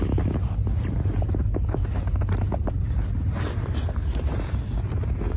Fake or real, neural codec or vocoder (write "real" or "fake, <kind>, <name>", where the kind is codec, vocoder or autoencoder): real